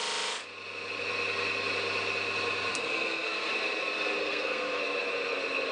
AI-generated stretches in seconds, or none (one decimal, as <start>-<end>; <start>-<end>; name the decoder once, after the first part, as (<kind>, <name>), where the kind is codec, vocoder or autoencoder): 2.7-3.5 (codec, SNAC); 4.2-4.8